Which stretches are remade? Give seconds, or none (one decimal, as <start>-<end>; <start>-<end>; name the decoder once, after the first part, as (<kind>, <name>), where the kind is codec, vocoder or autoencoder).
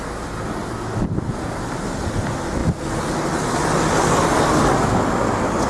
none